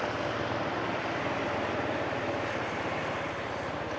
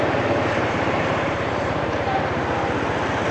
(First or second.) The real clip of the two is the first